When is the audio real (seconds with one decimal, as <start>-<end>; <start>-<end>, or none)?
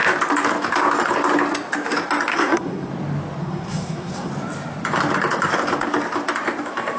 0.0-2.3; 2.9-3.4; 4.3-7.0